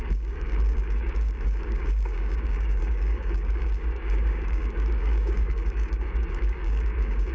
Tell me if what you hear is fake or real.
fake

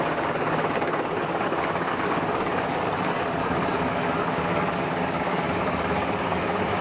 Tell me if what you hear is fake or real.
fake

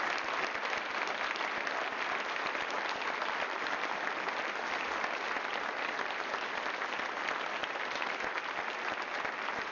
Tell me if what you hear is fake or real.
real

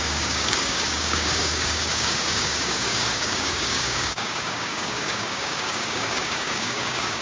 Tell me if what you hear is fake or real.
fake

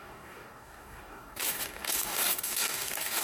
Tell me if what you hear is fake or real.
fake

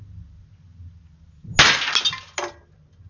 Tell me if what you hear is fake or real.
real